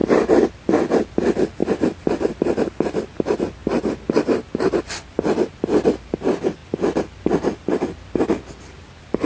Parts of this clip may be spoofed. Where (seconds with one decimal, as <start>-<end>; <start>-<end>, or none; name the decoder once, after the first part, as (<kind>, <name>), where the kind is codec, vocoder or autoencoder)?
0.0-1.1 (vocoder, BigVGAN v2); 1.6-2.4; 3.6-5.1